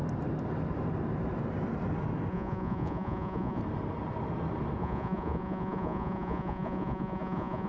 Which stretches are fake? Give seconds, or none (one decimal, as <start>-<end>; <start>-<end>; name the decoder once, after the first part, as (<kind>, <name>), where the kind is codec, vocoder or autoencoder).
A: 2.3-3.6 (vocoder, Vocos); 4.8-7.7